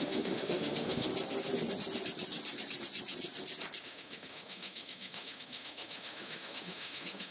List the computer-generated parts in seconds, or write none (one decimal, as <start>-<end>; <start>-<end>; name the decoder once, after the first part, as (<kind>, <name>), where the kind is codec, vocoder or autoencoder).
0.0-1.1 (autoencoder, DAC-VAE); 3.8-7.3